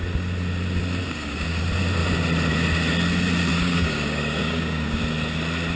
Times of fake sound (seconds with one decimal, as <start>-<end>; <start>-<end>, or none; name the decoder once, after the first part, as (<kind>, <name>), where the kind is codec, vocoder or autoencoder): 1.0-1.6 (codec, DAC); 3.5-5.0